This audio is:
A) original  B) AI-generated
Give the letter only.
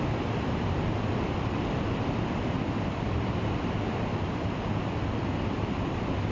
A